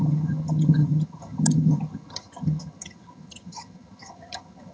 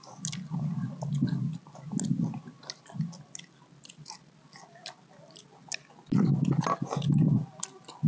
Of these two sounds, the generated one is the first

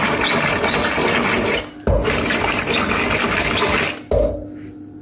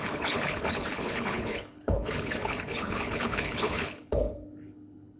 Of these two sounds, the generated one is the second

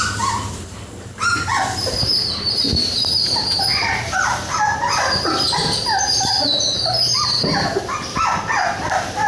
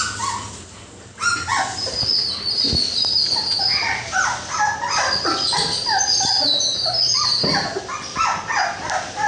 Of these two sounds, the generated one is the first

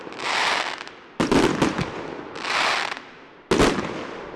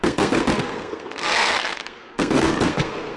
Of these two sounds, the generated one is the second